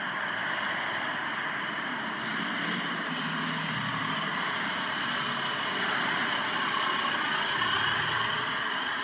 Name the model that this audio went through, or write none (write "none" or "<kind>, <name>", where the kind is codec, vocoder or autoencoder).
none